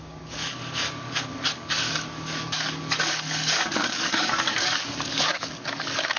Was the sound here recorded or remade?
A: remade